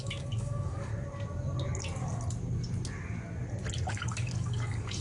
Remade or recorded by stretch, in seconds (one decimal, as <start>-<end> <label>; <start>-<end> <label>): 0.0-0.9 remade; 0.9-3.9 recorded; 3.9-5.0 remade